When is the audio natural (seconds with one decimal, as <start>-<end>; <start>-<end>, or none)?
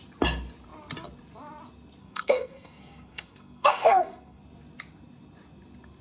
0.0-2.0; 4.4-6.0